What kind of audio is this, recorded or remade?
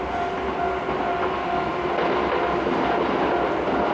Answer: recorded